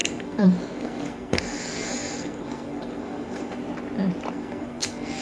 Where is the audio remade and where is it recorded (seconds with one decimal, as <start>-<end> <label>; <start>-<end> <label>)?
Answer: 0.0-3.6 remade; 3.6-4.3 recorded; 4.3-5.2 remade